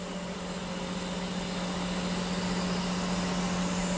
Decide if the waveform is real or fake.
real